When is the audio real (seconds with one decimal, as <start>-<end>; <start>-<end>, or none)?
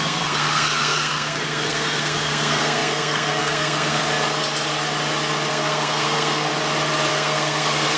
4.0-5.5; 6.5-7.1